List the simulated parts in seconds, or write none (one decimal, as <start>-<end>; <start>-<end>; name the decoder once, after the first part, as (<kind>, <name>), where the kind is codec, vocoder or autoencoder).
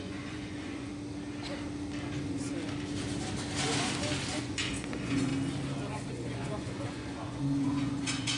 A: 0.0-0.9 (vocoder, Vocos); 4.4-5.3; 6.1-8.4